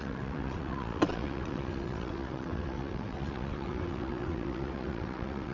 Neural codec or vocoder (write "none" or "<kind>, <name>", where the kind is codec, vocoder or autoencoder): vocoder, WaveNeXt